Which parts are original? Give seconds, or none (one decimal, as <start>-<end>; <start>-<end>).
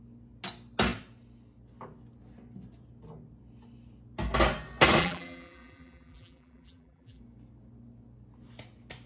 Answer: 0.0-5.0; 7.2-9.1